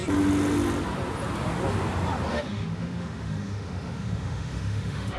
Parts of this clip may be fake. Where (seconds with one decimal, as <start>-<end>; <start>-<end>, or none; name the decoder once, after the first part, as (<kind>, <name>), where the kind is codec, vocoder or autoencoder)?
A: 2.3-5.2 (autoencoder, DAC-VAE)